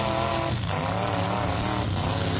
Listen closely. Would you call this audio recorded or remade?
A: recorded